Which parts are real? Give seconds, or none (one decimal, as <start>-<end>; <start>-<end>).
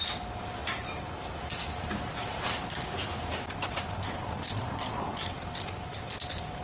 0.0-6.6